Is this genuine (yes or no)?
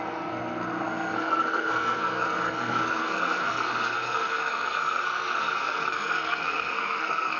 no